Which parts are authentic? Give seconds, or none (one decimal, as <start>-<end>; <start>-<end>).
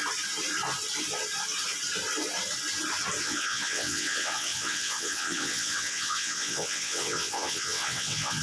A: 0.0-3.2